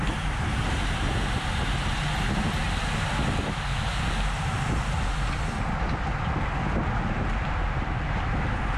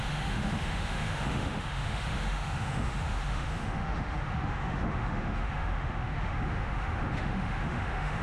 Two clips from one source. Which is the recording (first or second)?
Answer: first